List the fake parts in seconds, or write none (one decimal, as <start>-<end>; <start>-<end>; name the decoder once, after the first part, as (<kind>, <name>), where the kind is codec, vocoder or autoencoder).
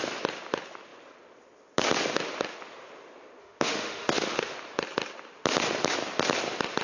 3.4-4.5 (autoencoder, DAC-VAE)